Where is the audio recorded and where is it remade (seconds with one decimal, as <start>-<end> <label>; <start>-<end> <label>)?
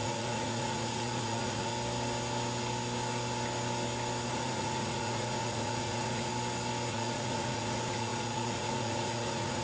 0.0-1.7 remade; 1.7-4.3 recorded; 4.3-6.3 remade; 6.3-6.9 recorded; 6.9-9.6 remade